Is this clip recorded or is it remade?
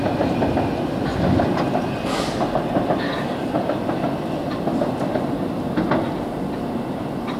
recorded